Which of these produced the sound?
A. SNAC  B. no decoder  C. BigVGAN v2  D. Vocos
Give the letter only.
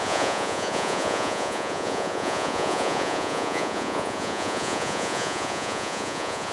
D